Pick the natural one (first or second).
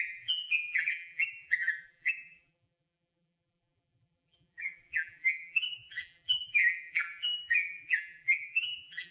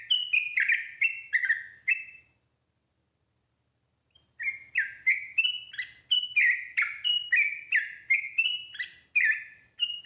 second